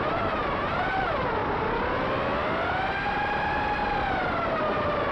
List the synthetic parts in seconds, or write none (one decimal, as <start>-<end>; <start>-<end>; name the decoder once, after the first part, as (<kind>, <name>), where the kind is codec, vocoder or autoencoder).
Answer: 0.0-1.4 (vocoder, BigVGAN v2); 4.5-5.1